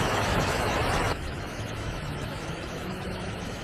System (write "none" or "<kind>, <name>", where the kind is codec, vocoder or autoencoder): autoencoder, DAC-VAE